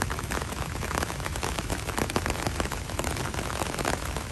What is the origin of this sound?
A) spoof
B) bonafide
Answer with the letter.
A